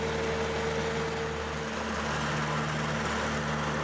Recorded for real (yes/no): yes